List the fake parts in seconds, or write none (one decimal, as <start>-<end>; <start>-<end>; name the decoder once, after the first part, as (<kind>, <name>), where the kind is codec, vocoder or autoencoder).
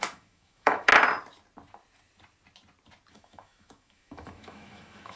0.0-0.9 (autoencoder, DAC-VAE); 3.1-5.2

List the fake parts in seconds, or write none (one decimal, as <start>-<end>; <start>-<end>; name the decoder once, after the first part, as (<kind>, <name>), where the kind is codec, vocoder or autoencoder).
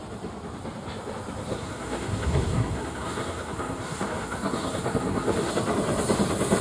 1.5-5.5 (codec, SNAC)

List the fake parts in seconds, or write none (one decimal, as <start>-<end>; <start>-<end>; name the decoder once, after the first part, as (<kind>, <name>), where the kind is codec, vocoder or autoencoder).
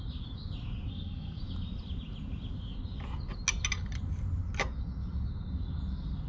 0.9-1.4 (codec, SNAC)